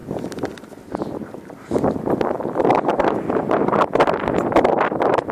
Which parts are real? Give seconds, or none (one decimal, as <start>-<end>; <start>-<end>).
0.0-5.3